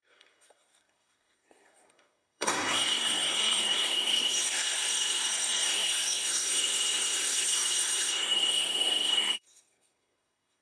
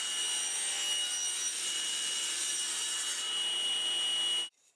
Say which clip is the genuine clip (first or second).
second